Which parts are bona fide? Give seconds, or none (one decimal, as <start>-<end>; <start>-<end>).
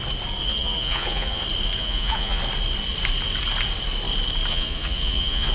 0.0-0.5; 1.4-1.8; 2.4-4.5